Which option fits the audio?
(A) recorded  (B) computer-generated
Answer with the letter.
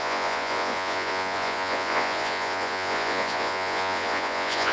B